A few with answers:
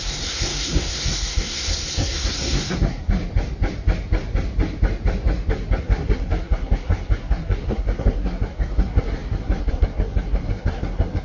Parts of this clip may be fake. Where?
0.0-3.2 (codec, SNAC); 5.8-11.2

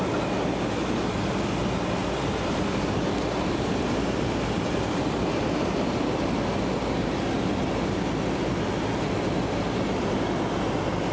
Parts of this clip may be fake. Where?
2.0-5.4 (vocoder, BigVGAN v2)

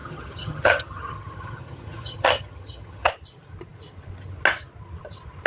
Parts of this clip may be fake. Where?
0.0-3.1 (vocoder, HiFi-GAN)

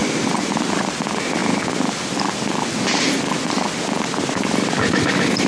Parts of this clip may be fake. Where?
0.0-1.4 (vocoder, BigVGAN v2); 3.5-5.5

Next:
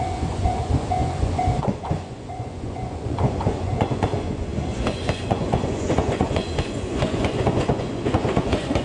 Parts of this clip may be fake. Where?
0.0-8.8 (vocoder, Vocos)